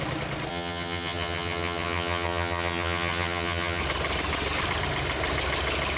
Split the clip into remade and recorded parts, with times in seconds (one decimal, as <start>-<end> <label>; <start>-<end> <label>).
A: 0.0-0.5 recorded; 0.5-3.8 remade; 3.8-6.0 recorded